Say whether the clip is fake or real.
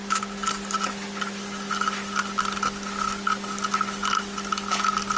real